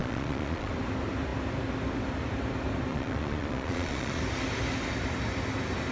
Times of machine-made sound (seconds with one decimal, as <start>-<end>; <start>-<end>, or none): 0.0-0.7; 2.9-4.2